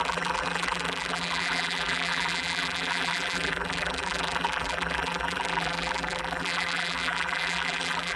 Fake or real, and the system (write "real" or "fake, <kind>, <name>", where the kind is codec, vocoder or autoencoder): fake, vocoder, BigVGAN v2